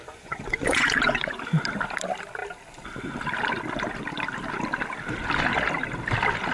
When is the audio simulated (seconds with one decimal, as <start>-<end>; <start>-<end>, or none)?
0.0-1.4